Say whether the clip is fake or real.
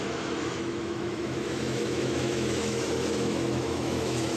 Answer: fake